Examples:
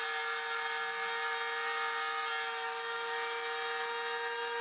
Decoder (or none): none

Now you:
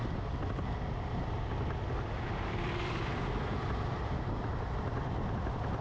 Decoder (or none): none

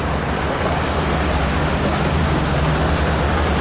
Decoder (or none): none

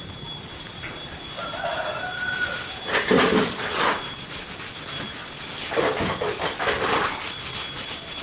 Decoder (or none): none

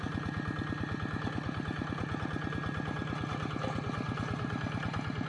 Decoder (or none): none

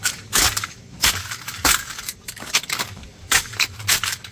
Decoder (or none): codec, DAC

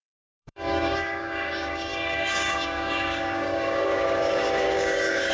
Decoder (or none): codec, DAC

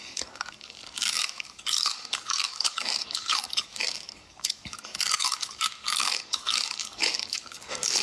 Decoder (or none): codec, DAC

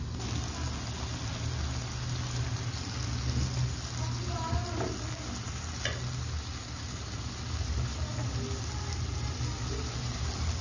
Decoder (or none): none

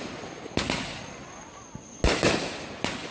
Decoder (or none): none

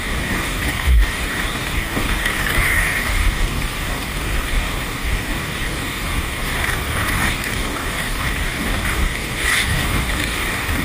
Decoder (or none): codec, DAC